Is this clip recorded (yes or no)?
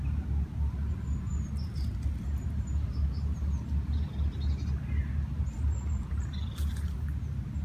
yes